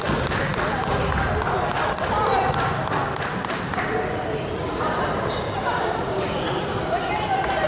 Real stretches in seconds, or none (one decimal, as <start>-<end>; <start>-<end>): 0.0-7.7